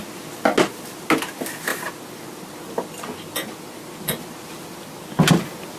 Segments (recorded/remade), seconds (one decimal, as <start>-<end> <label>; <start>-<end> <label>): 0.0-5.8 recorded